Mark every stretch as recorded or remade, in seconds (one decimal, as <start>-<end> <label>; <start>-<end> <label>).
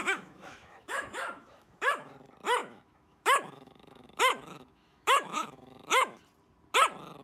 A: 0.0-2.1 remade; 2.1-2.6 recorded; 2.6-6.2 remade; 6.2-7.2 recorded